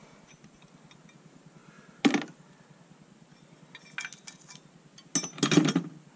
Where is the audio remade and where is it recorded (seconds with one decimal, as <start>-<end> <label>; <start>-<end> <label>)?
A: 0.0-6.2 recorded